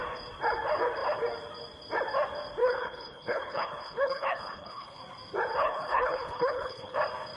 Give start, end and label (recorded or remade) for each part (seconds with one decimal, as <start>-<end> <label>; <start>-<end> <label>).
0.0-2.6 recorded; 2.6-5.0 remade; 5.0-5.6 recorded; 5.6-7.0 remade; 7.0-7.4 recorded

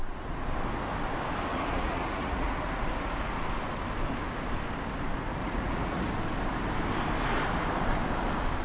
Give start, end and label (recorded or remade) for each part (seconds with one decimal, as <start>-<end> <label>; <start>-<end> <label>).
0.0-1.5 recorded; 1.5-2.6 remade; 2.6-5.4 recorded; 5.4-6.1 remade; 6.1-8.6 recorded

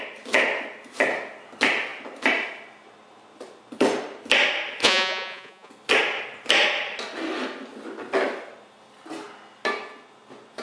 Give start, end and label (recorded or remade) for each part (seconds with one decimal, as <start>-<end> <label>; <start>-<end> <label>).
0.0-4.8 recorded; 4.8-5.7 remade; 5.7-10.6 recorded

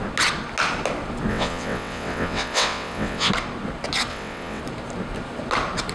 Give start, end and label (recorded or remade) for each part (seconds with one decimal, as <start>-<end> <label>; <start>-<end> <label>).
0.0-1.3 recorded; 1.3-3.3 remade; 3.3-4.1 recorded; 4.1-4.6 remade; 4.6-5.9 recorded